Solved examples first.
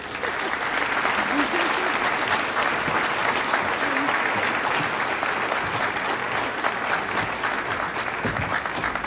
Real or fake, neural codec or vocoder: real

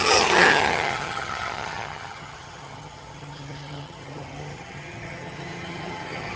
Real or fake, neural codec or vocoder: fake, vocoder, HiFi-GAN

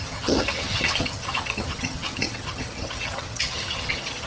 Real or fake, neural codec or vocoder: fake, vocoder, HiFi-GAN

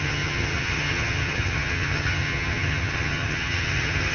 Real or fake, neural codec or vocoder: fake, vocoder, HiFi-GAN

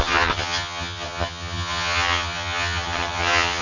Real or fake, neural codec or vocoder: fake, vocoder, HiFi-GAN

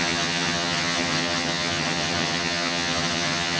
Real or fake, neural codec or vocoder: fake, vocoder, HiFi-GAN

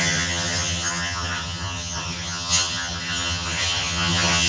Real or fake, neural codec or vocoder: fake, vocoder, HiFi-GAN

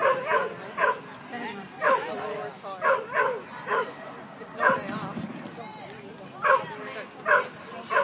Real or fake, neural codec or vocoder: real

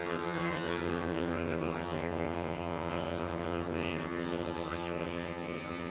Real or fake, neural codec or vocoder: fake, vocoder, HiFi-GAN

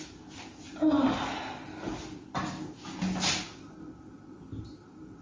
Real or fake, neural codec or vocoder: real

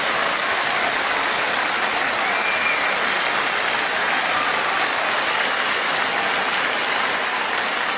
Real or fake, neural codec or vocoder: real